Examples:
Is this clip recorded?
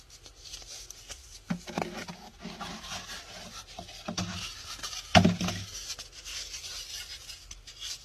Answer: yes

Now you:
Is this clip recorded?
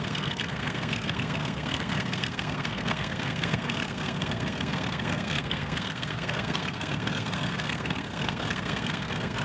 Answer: no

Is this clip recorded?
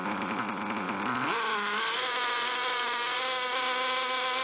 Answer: yes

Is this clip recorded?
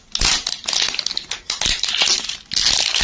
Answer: yes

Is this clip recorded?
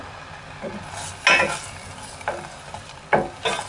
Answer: yes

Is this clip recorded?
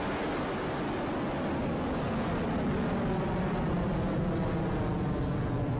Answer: yes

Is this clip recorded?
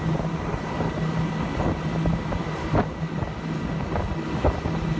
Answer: yes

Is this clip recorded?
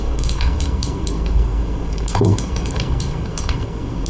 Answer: no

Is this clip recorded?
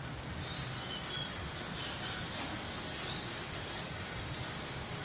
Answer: yes